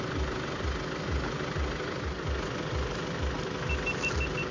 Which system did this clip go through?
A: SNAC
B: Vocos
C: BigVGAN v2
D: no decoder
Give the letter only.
D